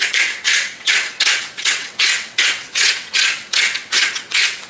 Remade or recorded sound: remade